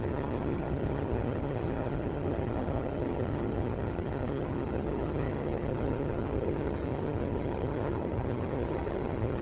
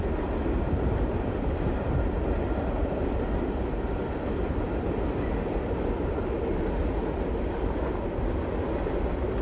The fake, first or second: first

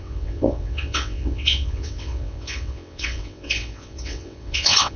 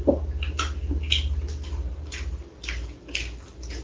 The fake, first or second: first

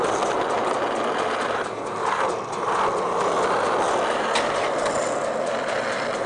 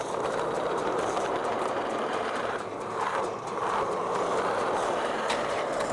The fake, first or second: second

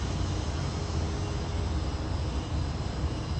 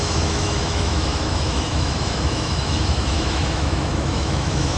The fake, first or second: second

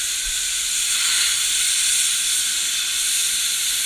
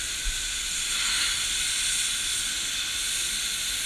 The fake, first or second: first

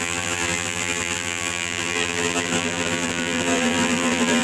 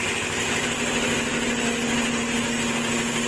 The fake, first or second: first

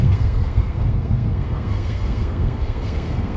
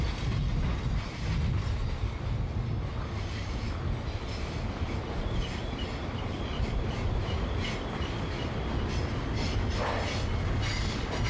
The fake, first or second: first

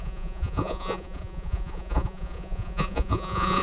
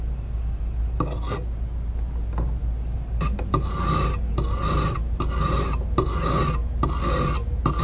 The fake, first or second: first